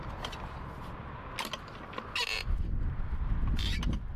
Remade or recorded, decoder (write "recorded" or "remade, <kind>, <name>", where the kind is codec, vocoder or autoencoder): recorded